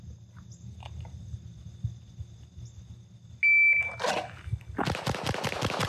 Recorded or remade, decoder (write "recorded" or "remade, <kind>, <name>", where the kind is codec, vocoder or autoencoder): recorded